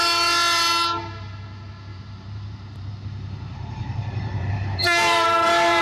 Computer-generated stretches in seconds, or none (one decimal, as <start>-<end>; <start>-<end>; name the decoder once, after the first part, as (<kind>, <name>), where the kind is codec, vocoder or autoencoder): 1.9-5.8 (vocoder, BigVGAN v2)